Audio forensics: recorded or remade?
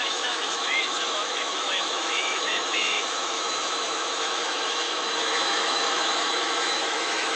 remade